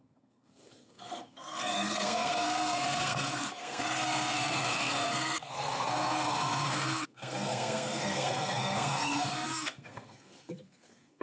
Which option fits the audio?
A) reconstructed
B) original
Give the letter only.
A